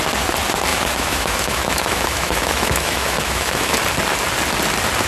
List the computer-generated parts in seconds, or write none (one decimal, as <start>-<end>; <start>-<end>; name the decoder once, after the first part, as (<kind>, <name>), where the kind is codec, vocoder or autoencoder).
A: 0.7-3.8 (autoencoder, DAC-VAE)